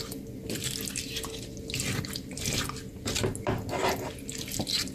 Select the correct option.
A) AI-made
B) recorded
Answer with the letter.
B